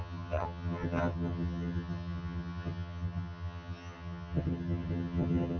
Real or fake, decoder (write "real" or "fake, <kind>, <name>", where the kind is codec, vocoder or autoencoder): fake, vocoder, HiFi-GAN